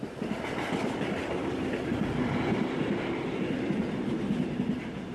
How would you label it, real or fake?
real